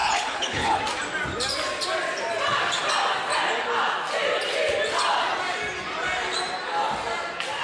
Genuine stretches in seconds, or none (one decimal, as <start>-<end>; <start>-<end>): 0.8-7.6